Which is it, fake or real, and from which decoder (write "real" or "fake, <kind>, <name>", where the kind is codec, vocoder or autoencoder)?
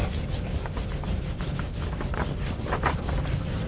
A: real